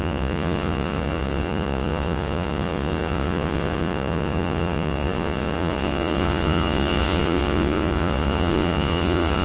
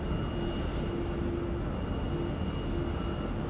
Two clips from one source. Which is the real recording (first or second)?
second